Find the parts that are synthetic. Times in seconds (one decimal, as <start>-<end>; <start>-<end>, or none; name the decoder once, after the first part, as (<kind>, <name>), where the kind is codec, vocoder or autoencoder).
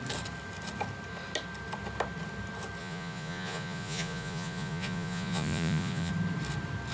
2.8-6.1 (vocoder, Vocos)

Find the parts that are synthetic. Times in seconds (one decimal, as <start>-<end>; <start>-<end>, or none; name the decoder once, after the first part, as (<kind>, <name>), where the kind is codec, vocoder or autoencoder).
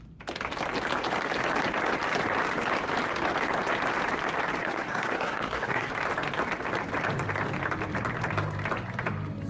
4.6-5.9 (codec, SNAC)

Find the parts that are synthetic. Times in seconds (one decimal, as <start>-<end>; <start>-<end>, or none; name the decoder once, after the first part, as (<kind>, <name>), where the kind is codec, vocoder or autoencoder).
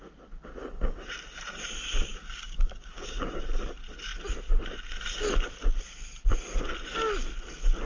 0.6-1.1 (codec, DAC); 2.0-3.4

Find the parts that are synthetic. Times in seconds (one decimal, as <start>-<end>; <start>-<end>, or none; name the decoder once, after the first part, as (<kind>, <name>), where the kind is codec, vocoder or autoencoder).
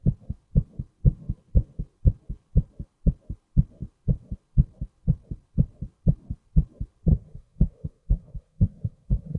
7.1-9.4 (codec, SNAC)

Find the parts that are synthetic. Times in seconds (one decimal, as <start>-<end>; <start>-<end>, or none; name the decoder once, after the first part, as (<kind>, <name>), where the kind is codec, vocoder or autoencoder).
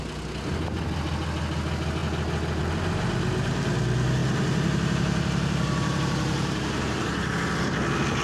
4.2-7.3 (vocoder, BigVGAN v2)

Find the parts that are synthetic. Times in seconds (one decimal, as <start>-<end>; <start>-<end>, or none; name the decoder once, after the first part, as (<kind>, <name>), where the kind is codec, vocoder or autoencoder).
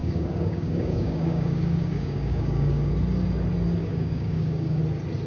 0.0-2.9 (codec, DAC); 3.8-4.8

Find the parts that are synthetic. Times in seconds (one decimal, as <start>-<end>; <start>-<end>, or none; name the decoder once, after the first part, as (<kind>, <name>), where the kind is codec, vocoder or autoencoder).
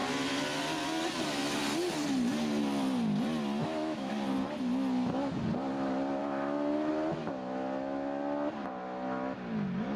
3.6-4.1 (autoencoder, DAC-VAE); 6.2-6.9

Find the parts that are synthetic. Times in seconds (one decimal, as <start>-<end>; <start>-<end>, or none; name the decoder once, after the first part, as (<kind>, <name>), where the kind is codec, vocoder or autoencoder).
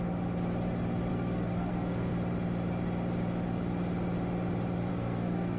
1.1-2.1 (codec, SNAC); 4.9-5.6